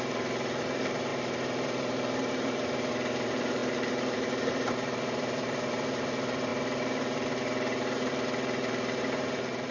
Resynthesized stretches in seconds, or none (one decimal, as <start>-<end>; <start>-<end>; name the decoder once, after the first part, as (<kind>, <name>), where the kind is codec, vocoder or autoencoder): 0.0-9.7 (vocoder, BigVGAN v2)